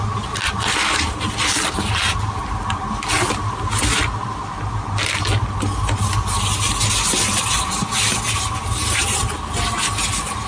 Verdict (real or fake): real